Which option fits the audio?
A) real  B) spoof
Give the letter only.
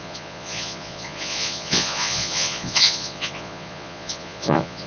B